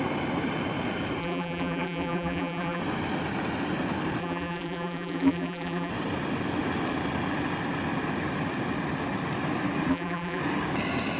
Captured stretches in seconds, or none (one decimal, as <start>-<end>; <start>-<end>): 0.0-1.2; 2.8-4.2; 5.9-9.9; 10.4-11.2